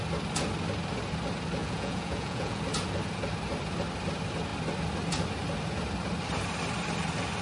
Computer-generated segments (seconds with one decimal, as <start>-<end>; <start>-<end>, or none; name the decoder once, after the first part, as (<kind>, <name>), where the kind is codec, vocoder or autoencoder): 1.6-2.6 (vocoder, Vocos)